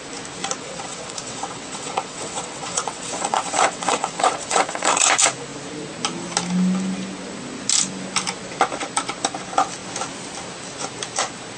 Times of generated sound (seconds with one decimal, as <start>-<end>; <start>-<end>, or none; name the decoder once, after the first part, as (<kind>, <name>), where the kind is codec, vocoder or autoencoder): 0.4-5.0 (vocoder, WaveNeXt)